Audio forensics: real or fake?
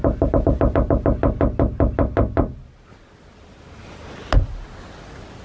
real